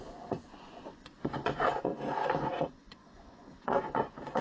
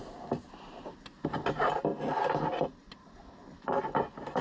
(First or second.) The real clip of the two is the second